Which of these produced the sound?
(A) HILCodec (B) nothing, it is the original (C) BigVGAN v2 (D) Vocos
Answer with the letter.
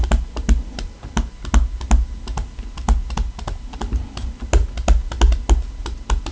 B